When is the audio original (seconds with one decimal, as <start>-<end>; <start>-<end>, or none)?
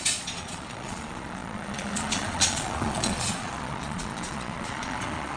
none